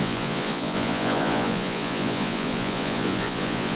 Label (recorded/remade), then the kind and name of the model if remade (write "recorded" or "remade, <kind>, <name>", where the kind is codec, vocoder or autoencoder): remade, vocoder, Vocos